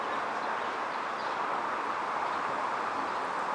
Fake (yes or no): no